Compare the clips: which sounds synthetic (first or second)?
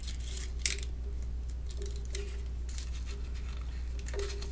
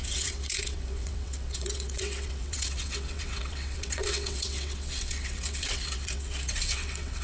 second